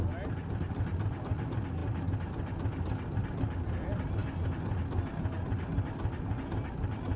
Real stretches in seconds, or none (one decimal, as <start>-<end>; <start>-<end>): 0.0-7.2